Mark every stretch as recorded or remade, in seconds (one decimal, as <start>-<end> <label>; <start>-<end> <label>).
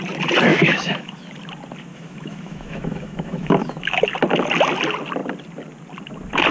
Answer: 0.0-0.5 recorded; 0.5-1.3 remade; 1.3-1.9 recorded; 1.9-4.0 remade; 4.0-6.5 recorded